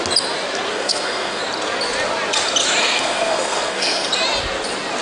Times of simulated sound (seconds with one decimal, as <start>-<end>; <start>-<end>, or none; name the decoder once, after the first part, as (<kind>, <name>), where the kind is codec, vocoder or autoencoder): 0.7-1.4 (codec, SNAC); 2.8-4.1